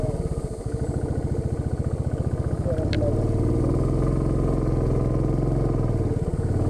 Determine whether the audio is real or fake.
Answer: real